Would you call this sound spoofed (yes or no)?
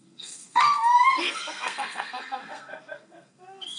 yes